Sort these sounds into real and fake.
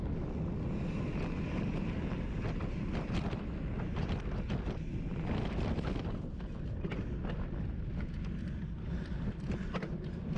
real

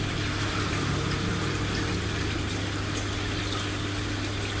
real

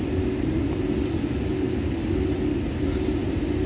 real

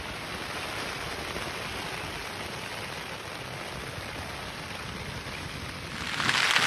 real